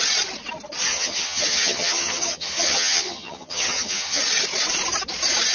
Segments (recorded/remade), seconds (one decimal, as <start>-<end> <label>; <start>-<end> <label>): 0.0-0.9 recorded; 0.9-4.2 remade; 4.2-5.5 recorded